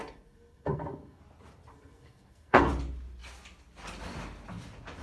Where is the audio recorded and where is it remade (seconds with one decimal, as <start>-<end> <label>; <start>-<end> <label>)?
0.0-1.2 remade; 1.2-1.7 recorded; 1.7-2.7 remade; 2.7-5.0 recorded

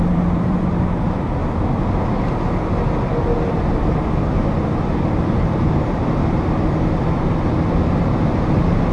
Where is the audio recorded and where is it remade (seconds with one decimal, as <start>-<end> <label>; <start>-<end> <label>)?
0.0-1.4 remade; 1.4-5.3 recorded; 5.3-6.0 remade; 6.0-8.0 recorded; 8.0-8.9 remade